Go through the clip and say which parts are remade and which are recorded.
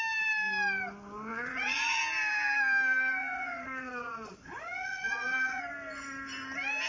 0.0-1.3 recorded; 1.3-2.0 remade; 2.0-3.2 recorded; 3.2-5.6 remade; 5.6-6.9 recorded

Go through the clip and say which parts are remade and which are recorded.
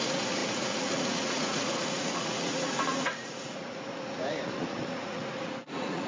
0.0-6.1 remade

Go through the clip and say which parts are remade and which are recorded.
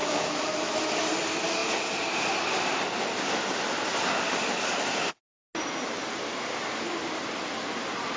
0.0-0.9 remade; 0.9-8.2 recorded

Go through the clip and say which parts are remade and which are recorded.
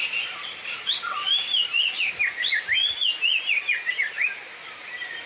0.0-5.2 recorded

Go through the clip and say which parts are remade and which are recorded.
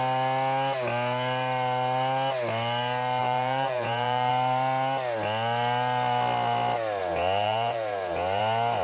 0.0-3.2 recorded; 3.2-4.3 remade; 4.3-7.0 recorded; 7.0-8.4 remade; 8.4-8.8 recorded